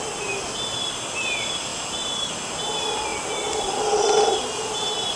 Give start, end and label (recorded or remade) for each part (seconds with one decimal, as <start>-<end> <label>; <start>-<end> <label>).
0.0-5.2 recorded